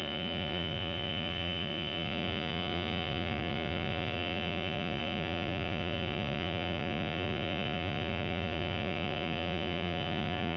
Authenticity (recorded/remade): remade